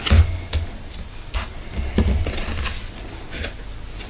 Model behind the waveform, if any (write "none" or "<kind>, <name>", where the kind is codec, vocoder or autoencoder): none